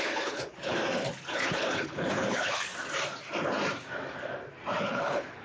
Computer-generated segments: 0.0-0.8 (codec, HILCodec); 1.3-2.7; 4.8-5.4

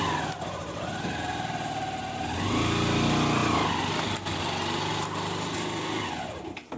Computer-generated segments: none

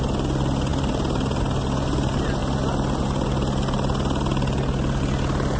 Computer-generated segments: none

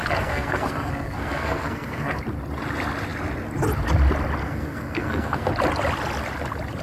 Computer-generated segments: 0.0-2.2 (codec, SNAC); 4.4-5.5

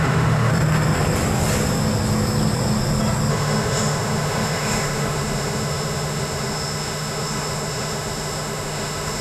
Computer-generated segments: 0.0-0.5 (autoencoder, DAC-VAE); 3.3-9.2

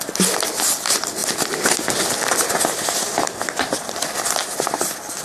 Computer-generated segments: 4.4-5.2 (vocoder, BigVGAN v2)